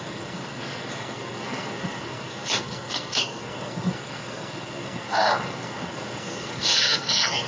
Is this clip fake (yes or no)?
yes